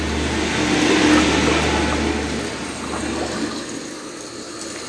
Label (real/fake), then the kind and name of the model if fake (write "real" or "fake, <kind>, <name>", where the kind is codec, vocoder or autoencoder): real